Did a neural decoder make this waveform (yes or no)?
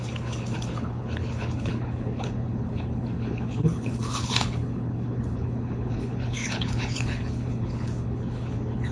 yes